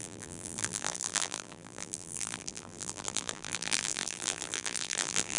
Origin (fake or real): fake